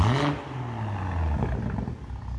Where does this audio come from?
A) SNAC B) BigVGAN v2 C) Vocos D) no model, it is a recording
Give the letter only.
D